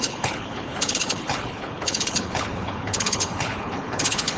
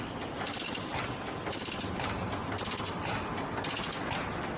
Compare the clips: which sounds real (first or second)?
second